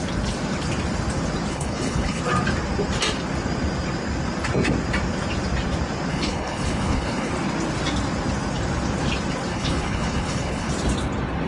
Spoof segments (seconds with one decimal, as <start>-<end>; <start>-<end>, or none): 1.5-2.2; 6.1-7.3; 9.5-10.7